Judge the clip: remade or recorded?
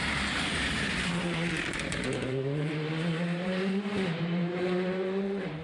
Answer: remade